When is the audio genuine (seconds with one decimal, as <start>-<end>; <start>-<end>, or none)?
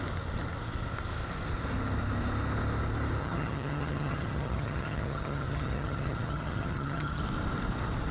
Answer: 0.0-3.2; 7.2-8.1